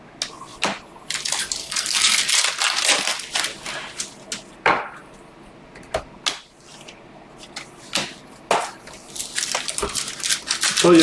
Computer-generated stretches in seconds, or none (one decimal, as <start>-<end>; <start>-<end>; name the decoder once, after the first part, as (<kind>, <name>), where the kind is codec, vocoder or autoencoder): 1.6-2.2 (codec, SNAC)